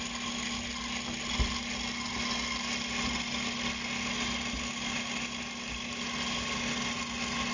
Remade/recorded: recorded